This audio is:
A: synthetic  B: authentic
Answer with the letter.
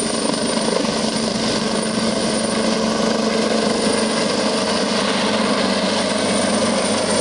B